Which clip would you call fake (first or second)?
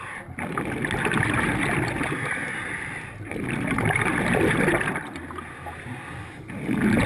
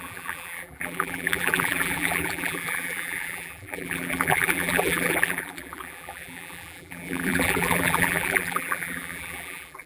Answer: second